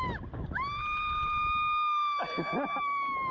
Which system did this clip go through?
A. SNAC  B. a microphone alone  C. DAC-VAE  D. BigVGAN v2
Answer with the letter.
B